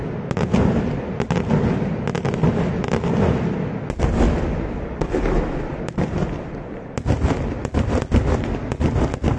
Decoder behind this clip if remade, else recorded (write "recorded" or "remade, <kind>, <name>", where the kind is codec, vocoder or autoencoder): recorded